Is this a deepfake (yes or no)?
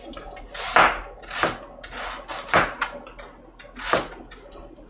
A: no